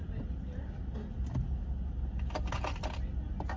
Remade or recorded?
recorded